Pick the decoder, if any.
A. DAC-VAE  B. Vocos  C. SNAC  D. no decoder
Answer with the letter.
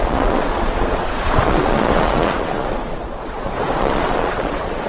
B